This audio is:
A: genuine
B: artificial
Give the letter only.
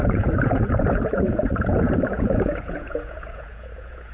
B